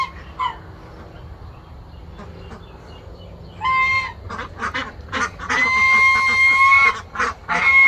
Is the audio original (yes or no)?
yes